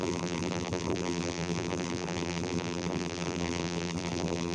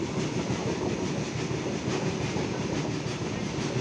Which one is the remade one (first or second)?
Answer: first